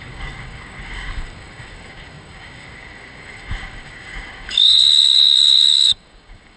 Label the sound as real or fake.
fake